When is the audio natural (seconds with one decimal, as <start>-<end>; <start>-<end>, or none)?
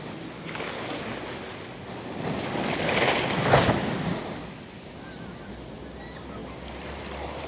0.0-7.5